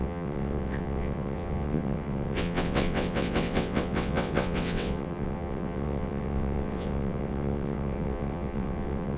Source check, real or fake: fake